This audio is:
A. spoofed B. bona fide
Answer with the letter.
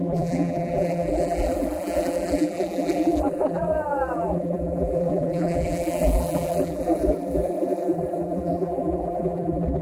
A